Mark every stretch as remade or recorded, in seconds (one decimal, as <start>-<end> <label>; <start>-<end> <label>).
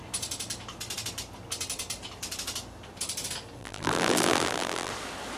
0.0-3.6 recorded; 3.6-4.9 remade; 4.9-5.4 recorded